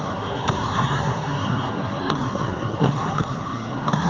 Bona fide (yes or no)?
no